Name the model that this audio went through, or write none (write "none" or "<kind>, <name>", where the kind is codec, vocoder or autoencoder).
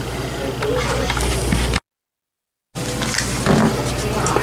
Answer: none